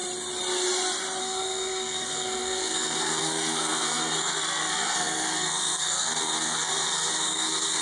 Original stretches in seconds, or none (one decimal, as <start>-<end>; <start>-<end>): 0.0-1.2